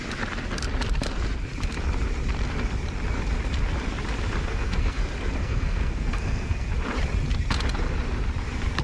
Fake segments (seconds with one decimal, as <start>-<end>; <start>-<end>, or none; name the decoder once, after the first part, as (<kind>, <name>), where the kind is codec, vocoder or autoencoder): 4.4-5.0 (codec, SNAC); 5.4-6.7